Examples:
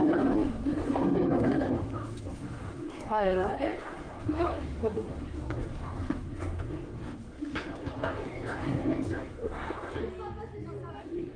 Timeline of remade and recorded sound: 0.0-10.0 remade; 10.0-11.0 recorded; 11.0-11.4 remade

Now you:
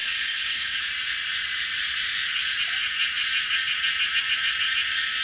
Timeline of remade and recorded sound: 0.0-0.8 remade; 0.8-5.2 recorded

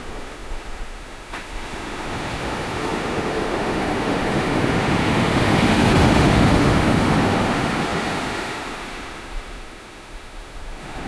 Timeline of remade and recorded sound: 0.0-11.1 remade

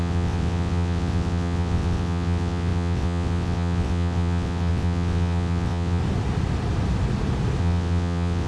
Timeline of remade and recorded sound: 0.0-6.0 remade; 6.0-7.6 recorded; 7.6-8.5 remade

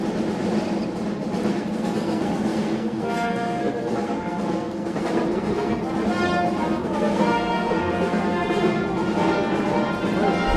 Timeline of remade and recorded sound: 0.0-1.5 recorded; 1.5-5.8 remade; 5.8-6.8 recorded; 6.8-8.8 remade; 8.8-10.6 recorded